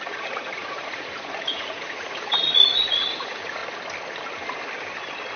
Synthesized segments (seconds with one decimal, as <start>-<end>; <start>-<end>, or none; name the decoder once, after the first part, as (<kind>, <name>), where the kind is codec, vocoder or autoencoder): 0.0-3.6 (vocoder, Vocos)